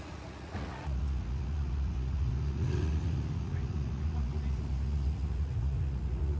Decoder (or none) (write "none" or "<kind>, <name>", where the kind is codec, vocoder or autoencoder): vocoder, Vocos